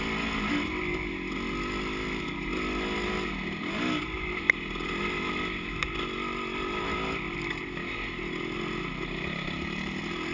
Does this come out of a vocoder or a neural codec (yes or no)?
no